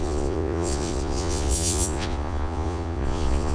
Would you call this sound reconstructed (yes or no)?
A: yes